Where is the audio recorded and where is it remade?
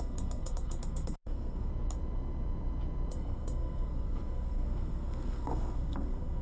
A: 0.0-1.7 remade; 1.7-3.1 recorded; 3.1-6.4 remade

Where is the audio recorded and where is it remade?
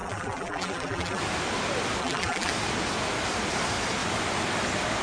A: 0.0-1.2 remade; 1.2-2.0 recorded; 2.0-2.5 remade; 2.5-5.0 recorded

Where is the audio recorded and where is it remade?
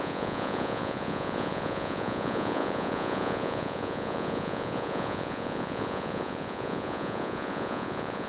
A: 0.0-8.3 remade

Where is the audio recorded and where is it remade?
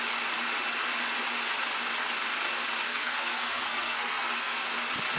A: 0.0-2.9 recorded; 2.9-4.6 remade; 4.6-5.2 recorded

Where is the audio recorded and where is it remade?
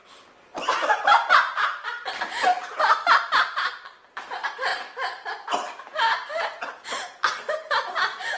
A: 0.0-0.9 remade; 0.9-4.7 recorded; 4.7-5.5 remade; 5.5-8.4 recorded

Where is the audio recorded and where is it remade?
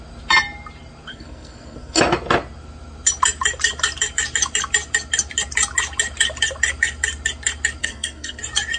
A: 0.0-1.1 recorded; 1.1-2.0 remade; 2.0-7.8 recorded; 7.8-8.4 remade; 8.4-8.8 recorded